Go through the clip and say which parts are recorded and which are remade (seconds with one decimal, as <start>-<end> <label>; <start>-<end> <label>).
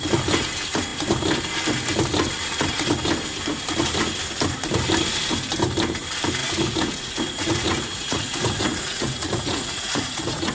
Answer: 0.0-6.4 recorded; 6.4-10.5 remade